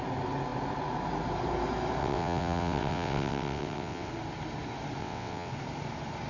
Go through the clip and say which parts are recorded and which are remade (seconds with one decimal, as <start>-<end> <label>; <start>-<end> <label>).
0.0-2.0 recorded; 2.0-4.1 remade; 4.1-5.0 recorded; 5.0-5.5 remade; 5.5-6.3 recorded

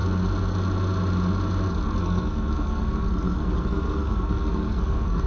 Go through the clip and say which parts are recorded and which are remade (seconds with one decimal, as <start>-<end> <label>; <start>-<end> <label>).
0.0-2.0 recorded; 2.0-5.3 remade

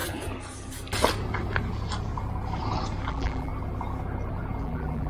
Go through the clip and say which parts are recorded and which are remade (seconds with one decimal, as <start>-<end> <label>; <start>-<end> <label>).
0.0-3.1 recorded; 3.1-3.5 remade; 3.5-4.6 recorded; 4.6-5.1 remade

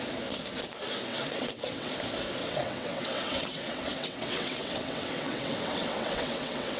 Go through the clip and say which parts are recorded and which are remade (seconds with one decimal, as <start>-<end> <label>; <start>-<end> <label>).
0.0-1.1 recorded; 1.1-1.9 remade; 1.9-2.4 recorded; 2.4-6.8 remade

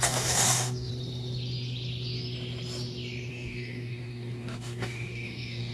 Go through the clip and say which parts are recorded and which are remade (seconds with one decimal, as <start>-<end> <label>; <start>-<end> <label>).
0.0-0.9 remade; 0.9-3.3 recorded; 3.3-5.7 remade

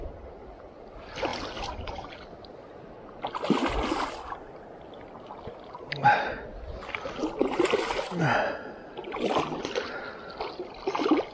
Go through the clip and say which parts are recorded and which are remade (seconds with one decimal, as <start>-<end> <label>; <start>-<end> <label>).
0.0-11.3 recorded

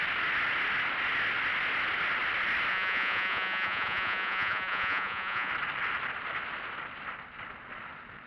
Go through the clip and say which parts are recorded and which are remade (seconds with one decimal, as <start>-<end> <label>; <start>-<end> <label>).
0.0-2.7 recorded; 2.7-5.5 remade; 5.5-8.3 recorded